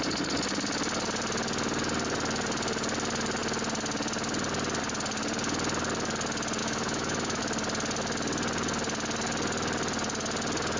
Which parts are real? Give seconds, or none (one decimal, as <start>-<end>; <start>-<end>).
0.0-6.6; 7.4-10.8

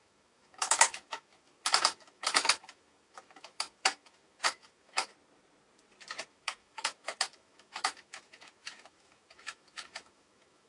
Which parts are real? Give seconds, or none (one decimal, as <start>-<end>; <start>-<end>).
5.1-6.3

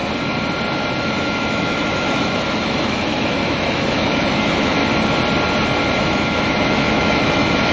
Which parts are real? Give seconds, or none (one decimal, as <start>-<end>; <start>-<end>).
0.0-1.0; 4.8-6.0

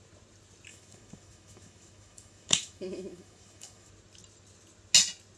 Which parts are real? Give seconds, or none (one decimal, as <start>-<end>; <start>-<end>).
0.0-0.7; 3.9-5.4

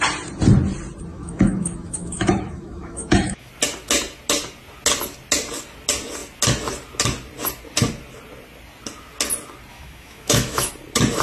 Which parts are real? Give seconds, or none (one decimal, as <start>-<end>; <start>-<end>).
0.0-1.1; 3.5-9.7; 10.7-11.2

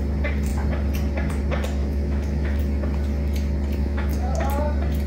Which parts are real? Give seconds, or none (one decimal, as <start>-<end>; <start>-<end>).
0.0-1.8; 2.6-3.8; 4.5-5.1

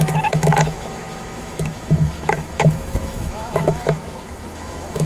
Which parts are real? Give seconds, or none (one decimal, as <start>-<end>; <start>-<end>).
none